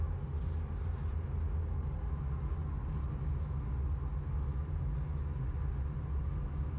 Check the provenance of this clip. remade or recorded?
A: recorded